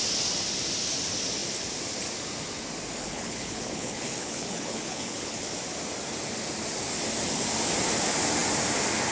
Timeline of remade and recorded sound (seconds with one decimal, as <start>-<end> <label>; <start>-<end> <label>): 0.0-3.0 recorded; 3.0-5.4 remade; 5.4-9.1 recorded